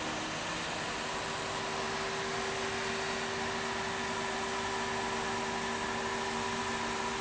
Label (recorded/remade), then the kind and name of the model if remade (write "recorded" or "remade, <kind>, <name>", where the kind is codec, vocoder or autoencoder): recorded